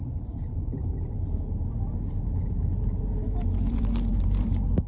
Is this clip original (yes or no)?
no